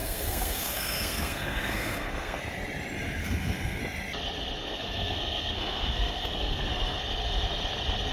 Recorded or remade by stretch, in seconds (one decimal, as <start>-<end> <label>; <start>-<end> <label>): 0.0-2.4 remade; 2.4-3.2 recorded; 3.2-3.8 remade; 3.8-4.6 recorded; 4.6-7.0 remade; 7.0-8.1 recorded